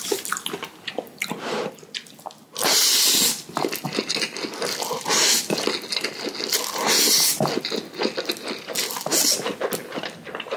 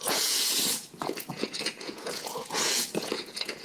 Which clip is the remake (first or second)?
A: second